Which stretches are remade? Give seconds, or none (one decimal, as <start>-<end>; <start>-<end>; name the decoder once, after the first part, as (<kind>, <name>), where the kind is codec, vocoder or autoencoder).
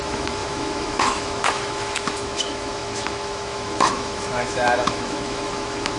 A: 0.0-6.0 (autoencoder, DAC-VAE)